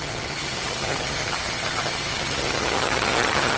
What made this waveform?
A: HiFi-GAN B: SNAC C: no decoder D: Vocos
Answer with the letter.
A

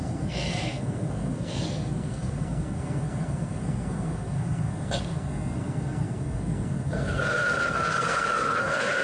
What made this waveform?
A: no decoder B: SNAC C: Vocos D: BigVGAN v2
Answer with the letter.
B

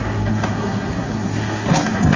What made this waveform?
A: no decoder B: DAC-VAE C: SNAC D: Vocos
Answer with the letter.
C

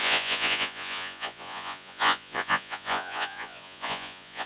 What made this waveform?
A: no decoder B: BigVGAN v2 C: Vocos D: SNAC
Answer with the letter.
C